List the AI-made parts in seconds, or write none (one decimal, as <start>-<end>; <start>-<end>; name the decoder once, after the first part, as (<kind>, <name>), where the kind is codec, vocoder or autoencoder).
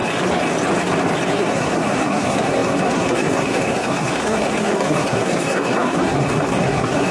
1.3-7.1 (codec, SNAC)